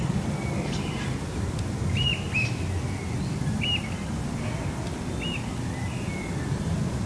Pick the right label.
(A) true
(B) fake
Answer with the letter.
A